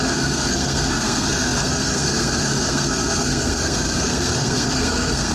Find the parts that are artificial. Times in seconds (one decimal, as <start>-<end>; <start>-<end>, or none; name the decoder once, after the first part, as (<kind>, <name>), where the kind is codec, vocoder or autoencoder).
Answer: 0.0-5.3 (codec, SNAC)